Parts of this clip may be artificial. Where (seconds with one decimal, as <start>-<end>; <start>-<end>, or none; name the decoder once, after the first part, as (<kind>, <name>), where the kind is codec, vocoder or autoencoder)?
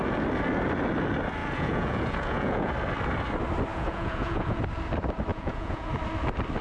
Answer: 1.4-2.7 (vocoder, Vocos); 3.7-4.6; 5.3-5.9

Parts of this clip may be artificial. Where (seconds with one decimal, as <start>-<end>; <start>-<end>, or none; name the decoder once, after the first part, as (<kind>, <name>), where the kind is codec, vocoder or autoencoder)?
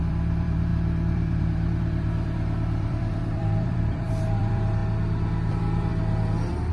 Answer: 0.0-4.8 (vocoder, BigVGAN v2); 5.5-5.9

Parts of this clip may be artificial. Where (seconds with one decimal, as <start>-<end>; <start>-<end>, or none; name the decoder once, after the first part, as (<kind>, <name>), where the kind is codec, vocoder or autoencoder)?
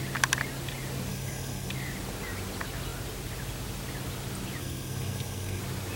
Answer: 1.1-1.7 (codec, SNAC); 4.6-5.6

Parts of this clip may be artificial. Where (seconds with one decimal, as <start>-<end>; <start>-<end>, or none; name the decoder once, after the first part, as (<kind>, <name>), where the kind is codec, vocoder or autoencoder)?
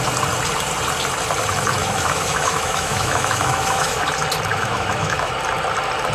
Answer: 1.8-4.1 (autoencoder, DAC-VAE); 4.5-5.3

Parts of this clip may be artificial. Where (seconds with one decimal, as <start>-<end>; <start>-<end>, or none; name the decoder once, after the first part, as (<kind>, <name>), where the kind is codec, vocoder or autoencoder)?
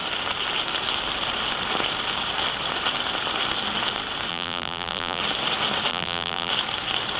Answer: 4.3-5.2 (vocoder, BigVGAN v2); 5.9-6.5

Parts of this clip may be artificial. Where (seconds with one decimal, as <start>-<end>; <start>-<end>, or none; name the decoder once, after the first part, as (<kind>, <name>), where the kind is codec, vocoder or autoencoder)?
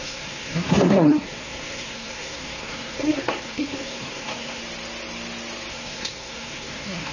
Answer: 0.0-4.6 (codec, SNAC); 5.7-7.1